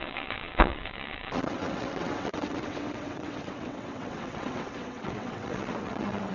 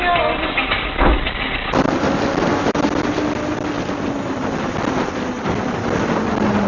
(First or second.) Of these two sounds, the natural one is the second